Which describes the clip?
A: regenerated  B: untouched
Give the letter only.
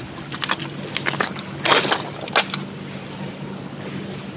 B